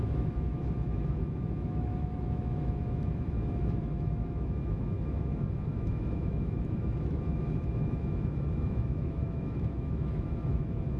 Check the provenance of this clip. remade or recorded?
remade